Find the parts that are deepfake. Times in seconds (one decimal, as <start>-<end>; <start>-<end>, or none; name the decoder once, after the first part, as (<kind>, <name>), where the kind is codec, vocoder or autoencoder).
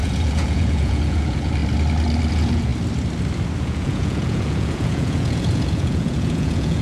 0.0-1.6 (vocoder, Vocos); 2.3-2.7; 3.6-6.8